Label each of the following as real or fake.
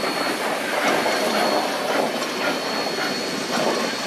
real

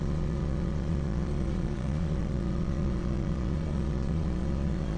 fake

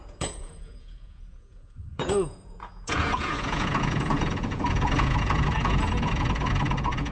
fake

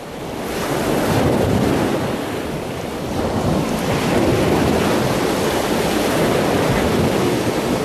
real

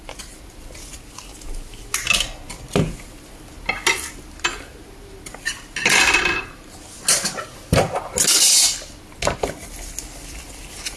real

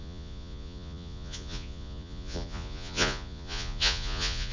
fake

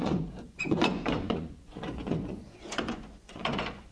fake